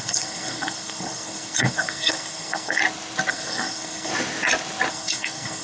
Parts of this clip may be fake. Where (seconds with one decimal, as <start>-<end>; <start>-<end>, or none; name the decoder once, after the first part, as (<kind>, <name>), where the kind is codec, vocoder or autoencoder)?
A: 0.0-2.8 (codec, SNAC); 3.3-4.1; 4.9-5.6